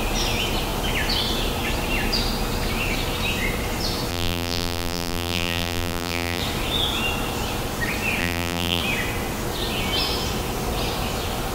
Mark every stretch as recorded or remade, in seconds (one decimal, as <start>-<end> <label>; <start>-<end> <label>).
0.0-4.1 recorded; 4.1-6.4 remade; 6.4-8.2 recorded; 8.2-8.8 remade; 8.8-11.5 recorded